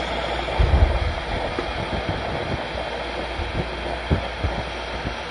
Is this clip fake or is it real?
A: real